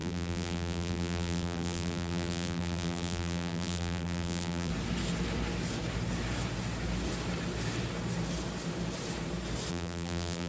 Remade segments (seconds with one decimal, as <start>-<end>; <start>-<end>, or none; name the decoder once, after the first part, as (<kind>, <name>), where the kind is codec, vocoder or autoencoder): 0.0-4.7 (vocoder, BigVGAN v2); 9.7-10.5